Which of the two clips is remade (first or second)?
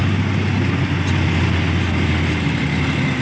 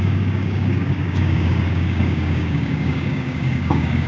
second